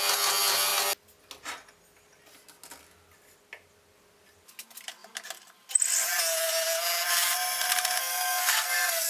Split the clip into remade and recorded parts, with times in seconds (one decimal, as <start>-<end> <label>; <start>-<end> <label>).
0.0-8.0 recorded; 8.0-9.1 remade